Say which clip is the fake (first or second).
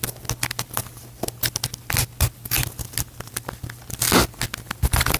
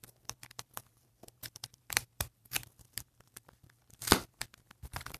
second